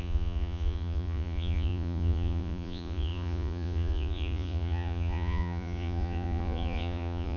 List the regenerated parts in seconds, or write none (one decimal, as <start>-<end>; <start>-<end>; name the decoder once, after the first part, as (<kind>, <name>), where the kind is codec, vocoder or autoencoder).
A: 0.0-7.4 (vocoder, Vocos)

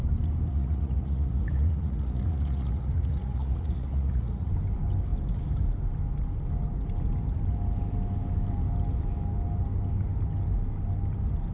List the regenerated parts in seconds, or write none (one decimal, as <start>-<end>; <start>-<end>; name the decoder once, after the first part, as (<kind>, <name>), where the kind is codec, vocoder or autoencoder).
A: 0.5-4.5 (vocoder, Vocos)

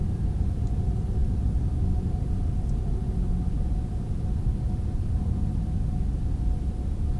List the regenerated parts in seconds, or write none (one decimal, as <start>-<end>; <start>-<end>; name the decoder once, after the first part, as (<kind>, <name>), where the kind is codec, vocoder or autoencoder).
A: none